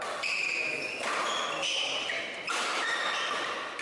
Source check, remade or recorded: recorded